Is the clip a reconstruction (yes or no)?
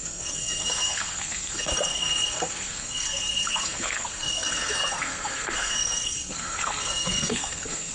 yes